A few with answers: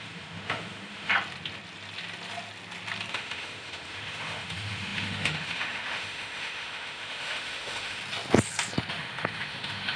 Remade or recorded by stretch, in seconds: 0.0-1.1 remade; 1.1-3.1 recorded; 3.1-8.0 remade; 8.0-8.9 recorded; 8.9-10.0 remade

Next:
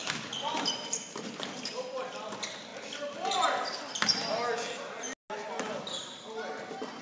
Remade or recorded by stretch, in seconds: 0.0-7.0 recorded

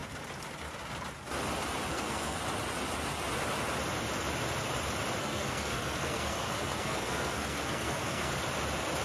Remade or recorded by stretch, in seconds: 0.0-1.9 recorded; 1.9-2.4 remade; 2.4-5.2 recorded; 5.2-8.3 remade; 8.3-9.0 recorded

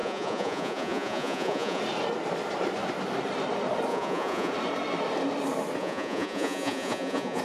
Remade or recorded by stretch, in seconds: 0.0-1.8 remade; 1.8-3.9 recorded; 3.9-4.5 remade; 4.5-5.8 recorded; 5.8-7.4 remade

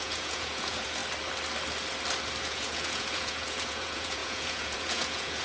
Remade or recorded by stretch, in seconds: 0.0-1.0 remade; 1.0-2.4 recorded; 2.4-5.4 remade

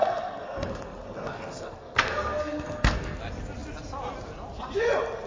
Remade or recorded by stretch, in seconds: 0.0-3.2 remade; 3.2-5.3 recorded

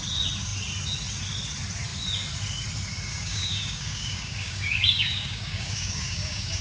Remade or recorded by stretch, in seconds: 0.0-3.1 recorded; 3.1-6.6 remade